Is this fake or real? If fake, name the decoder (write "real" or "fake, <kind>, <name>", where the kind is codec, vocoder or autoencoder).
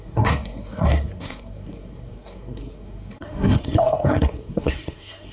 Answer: fake, codec, SNAC